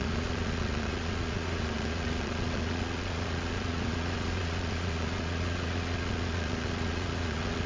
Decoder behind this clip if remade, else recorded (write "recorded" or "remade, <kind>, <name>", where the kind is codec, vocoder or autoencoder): remade, vocoder, Vocos